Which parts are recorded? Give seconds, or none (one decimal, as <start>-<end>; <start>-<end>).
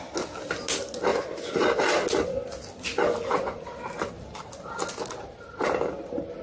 0.0-6.4